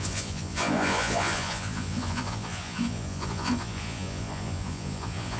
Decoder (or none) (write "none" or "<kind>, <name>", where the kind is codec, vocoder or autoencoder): vocoder, Vocos